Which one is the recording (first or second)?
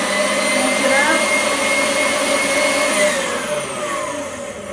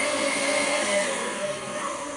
first